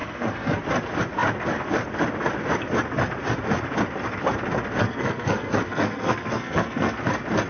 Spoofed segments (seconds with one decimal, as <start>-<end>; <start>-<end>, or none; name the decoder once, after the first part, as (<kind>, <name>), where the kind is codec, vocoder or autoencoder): 0.0-0.6 (codec, SNAC); 4.8-7.0